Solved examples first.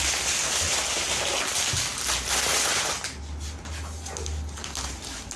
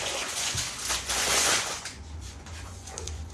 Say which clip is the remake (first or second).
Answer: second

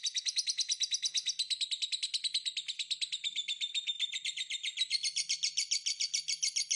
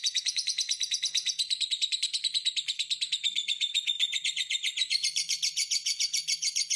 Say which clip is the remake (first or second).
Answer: second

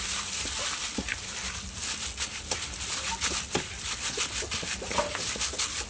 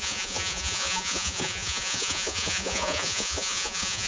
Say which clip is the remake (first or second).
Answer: second